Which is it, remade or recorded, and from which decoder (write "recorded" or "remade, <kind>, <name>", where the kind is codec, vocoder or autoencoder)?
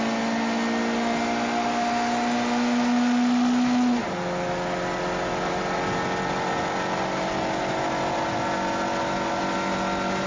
recorded